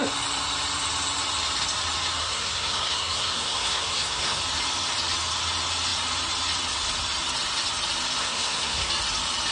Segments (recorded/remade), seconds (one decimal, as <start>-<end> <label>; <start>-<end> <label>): 0.0-2.2 recorded; 2.2-4.4 remade; 4.4-8.2 recorded; 8.2-8.9 remade; 8.9-9.5 recorded